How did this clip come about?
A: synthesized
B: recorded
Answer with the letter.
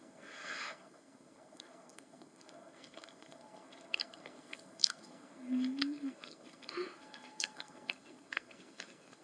A